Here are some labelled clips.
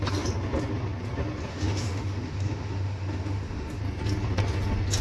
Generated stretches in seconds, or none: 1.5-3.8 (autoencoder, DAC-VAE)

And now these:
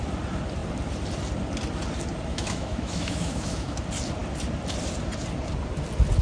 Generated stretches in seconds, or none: 2.3-3.8 (autoencoder, DAC-VAE)

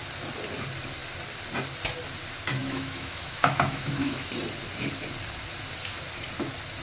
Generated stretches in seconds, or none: 2.6-4.3 (autoencoder, DAC-VAE)